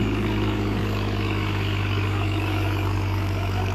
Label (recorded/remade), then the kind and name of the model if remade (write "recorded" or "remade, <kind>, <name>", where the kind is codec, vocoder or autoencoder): remade, codec, DAC